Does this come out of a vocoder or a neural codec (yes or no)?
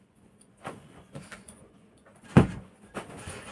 yes